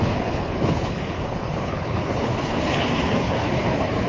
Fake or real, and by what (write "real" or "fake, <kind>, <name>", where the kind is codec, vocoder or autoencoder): fake, codec, HILCodec